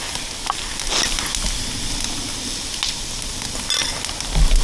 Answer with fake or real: real